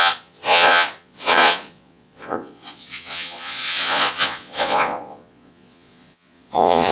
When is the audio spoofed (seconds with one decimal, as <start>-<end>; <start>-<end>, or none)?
0.0-6.9